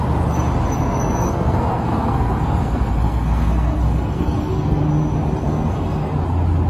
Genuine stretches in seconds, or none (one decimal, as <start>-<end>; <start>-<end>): 0.0-0.8; 4.8-5.4; 6.1-6.7